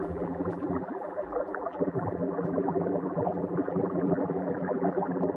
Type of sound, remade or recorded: remade